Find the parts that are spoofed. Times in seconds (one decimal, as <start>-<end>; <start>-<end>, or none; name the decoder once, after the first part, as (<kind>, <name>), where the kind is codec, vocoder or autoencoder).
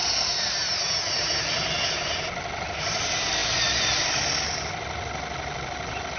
none